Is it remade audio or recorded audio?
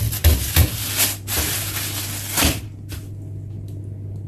recorded